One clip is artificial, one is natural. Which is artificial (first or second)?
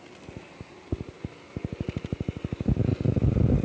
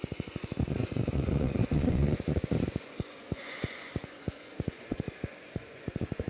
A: second